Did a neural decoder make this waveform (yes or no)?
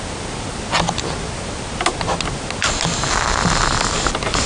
no